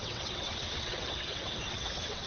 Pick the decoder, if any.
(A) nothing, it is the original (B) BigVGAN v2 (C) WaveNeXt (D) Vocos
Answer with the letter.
C